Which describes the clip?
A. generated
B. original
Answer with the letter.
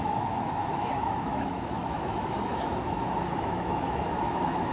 A